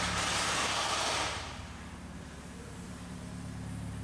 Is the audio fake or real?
fake